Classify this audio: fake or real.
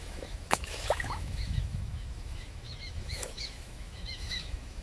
fake